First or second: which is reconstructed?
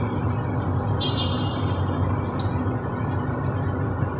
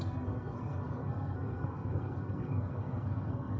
second